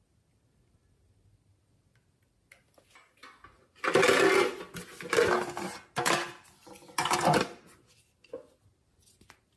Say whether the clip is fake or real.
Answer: real